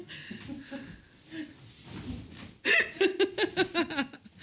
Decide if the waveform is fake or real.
real